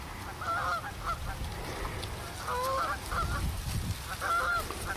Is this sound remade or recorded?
recorded